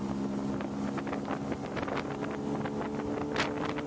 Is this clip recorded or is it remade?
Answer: recorded